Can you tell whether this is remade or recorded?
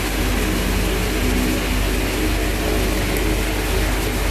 recorded